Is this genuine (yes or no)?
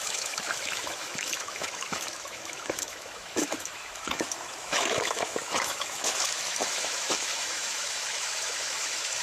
no